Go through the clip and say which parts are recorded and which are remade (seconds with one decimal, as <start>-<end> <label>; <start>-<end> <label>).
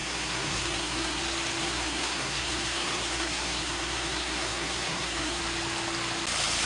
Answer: 0.0-1.2 remade; 1.2-1.6 recorded; 1.6-5.4 remade; 5.4-6.7 recorded